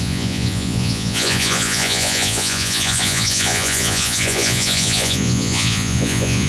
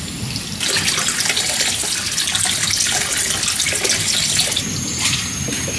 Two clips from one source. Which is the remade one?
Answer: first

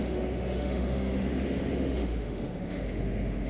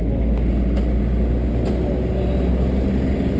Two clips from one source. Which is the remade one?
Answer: first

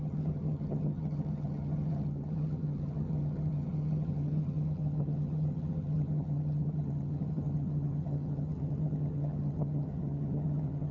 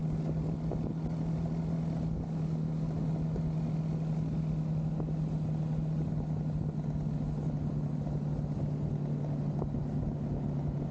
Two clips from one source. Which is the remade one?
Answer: first